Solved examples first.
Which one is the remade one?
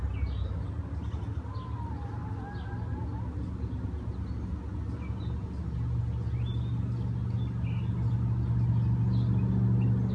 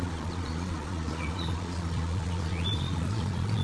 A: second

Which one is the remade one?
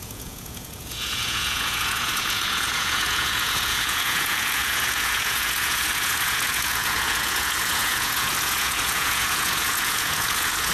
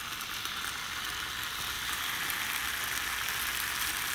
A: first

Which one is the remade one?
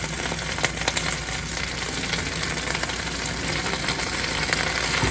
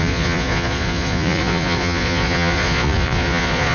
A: second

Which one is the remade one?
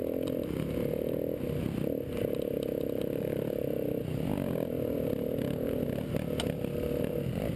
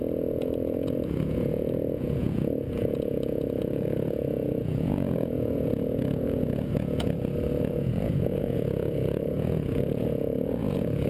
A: second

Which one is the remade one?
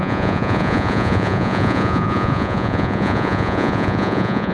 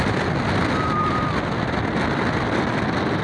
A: first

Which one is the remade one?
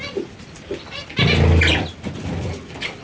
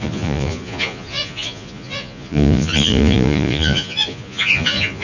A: second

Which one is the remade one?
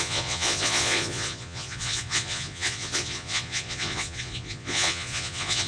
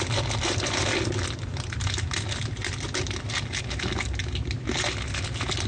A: first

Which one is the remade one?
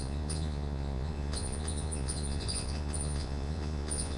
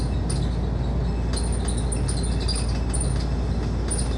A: first